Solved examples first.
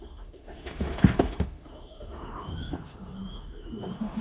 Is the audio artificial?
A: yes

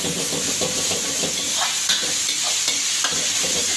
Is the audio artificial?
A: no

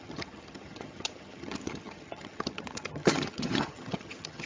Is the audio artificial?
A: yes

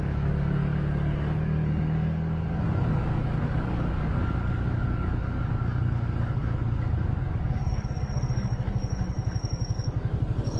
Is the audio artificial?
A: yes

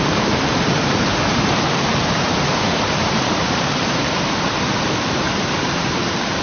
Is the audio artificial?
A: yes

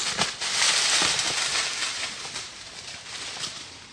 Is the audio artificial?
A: no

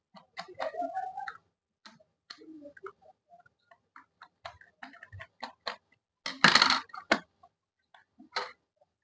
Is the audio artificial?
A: no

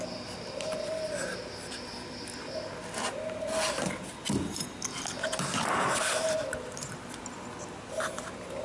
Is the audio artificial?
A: no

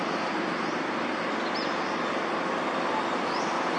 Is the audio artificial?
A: no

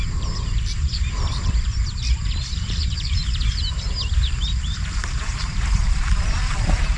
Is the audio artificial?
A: yes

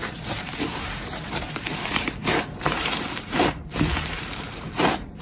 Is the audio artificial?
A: yes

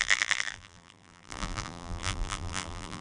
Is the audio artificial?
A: yes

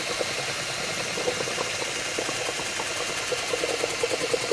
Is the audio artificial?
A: no